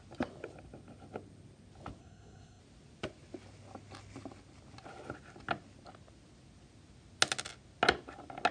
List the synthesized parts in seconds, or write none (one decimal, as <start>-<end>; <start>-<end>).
2.0-2.6